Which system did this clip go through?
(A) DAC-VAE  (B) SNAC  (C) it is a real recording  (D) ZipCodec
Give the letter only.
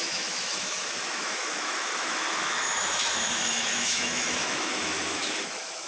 A